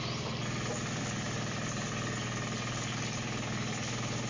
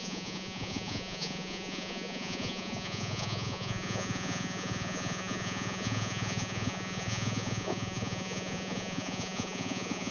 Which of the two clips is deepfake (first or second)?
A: second